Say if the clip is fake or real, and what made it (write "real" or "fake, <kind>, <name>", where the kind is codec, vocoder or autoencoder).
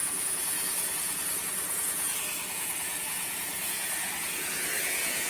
fake, vocoder, Vocos